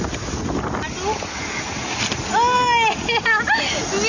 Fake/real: real